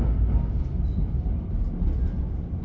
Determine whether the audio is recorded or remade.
recorded